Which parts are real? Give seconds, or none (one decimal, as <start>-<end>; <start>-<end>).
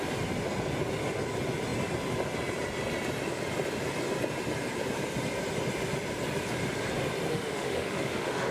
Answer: 0.0-7.3